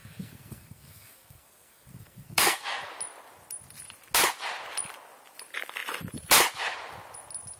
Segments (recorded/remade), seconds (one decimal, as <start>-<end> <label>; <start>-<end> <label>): 0.0-2.9 remade; 2.9-7.6 recorded